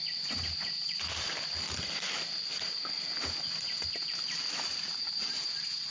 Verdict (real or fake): real